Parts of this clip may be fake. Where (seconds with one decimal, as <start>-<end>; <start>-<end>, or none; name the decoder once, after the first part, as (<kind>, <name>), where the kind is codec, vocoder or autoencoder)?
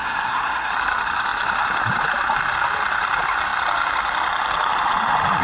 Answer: 0.0-0.7 (codec, SNAC)